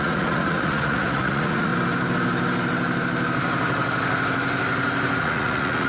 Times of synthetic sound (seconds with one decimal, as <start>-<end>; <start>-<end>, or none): 0.0-1.7; 5.2-5.9